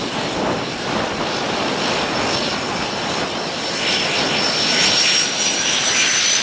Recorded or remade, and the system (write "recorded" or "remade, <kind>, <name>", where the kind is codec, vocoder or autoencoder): recorded